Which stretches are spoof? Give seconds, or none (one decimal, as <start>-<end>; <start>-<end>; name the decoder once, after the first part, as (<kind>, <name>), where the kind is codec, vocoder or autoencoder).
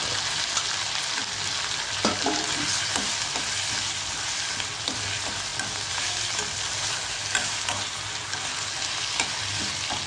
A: none